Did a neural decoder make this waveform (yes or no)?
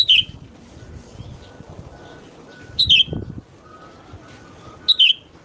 no